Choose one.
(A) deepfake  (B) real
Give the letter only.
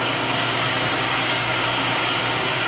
A